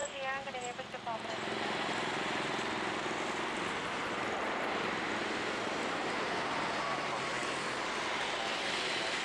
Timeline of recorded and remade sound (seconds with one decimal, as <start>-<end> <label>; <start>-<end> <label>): 0.0-0.5 remade; 0.5-9.2 recorded